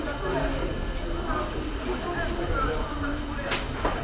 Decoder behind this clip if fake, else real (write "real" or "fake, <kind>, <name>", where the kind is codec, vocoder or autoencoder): real